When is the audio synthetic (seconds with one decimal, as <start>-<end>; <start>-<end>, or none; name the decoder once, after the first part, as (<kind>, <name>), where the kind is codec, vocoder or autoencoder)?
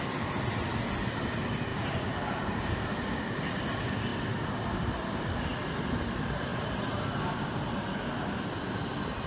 1.7-2.9 (vocoder, BigVGAN v2); 6.5-7.9